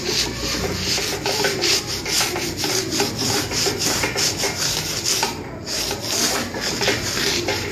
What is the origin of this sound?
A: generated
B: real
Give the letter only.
B